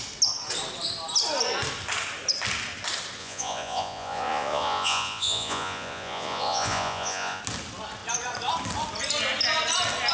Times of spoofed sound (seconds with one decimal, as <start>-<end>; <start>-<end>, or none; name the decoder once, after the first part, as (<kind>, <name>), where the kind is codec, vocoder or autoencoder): 3.2-7.4 (vocoder, Vocos)